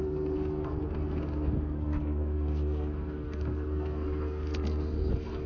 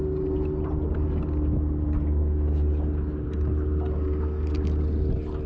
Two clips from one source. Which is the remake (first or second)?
first